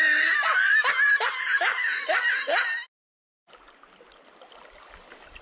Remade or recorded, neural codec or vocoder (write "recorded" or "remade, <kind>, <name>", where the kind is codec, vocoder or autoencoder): recorded